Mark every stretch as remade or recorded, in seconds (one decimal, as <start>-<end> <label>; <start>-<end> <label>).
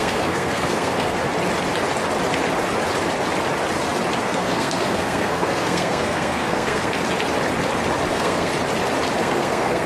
0.0-1.2 remade; 1.2-4.2 recorded; 4.2-7.0 remade; 7.0-8.1 recorded; 8.1-8.5 remade; 8.5-9.2 recorded; 9.2-9.9 remade